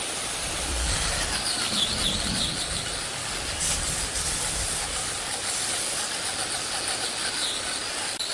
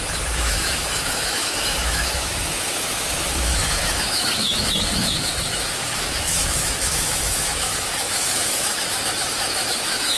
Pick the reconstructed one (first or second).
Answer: second